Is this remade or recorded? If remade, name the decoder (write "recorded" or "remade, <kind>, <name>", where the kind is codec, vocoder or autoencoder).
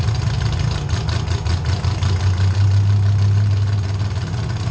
recorded